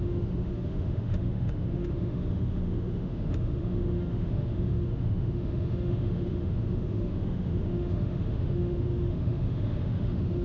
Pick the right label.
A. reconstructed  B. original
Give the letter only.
A